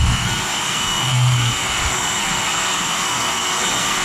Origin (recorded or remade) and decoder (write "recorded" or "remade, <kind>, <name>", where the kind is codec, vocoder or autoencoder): remade, codec, SNAC